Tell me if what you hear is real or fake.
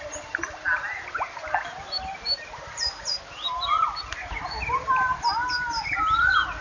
real